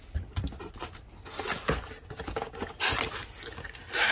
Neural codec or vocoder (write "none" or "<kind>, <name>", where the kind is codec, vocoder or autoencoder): none